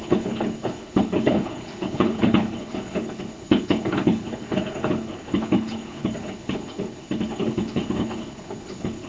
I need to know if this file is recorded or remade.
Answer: remade